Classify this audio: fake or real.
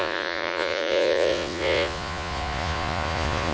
fake